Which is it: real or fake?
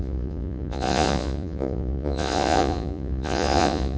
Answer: fake